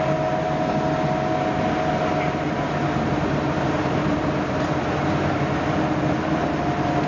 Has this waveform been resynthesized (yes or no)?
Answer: no